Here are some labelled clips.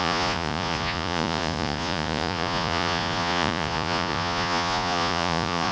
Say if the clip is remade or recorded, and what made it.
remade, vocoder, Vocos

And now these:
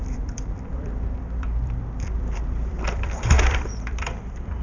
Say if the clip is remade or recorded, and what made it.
remade, vocoder, BigVGAN v2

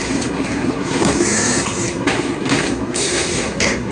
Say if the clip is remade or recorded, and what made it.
remade, codec, SNAC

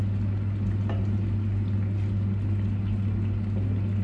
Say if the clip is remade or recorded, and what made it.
recorded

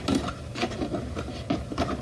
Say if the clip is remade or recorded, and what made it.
recorded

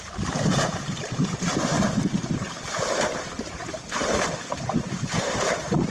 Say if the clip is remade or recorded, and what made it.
remade, vocoder, BigVGAN v2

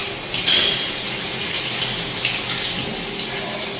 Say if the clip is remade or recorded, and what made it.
recorded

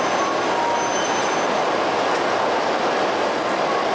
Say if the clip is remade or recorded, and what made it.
recorded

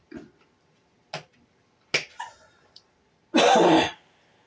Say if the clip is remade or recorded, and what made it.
recorded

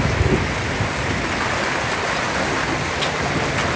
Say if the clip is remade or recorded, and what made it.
recorded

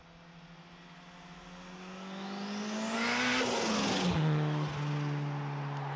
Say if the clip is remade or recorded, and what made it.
recorded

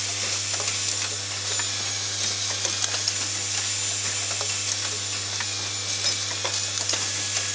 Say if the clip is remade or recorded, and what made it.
recorded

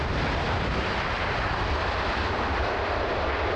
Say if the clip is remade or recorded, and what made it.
recorded